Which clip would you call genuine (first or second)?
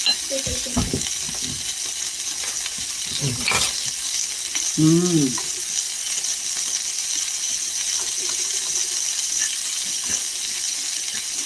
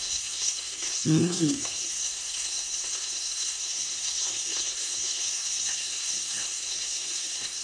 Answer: first